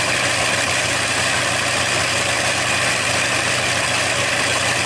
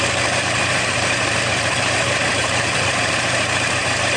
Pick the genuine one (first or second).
first